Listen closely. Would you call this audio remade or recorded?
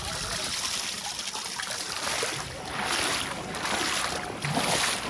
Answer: recorded